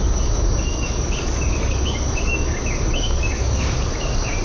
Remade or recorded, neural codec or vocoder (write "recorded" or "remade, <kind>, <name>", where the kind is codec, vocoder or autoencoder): remade, codec, DAC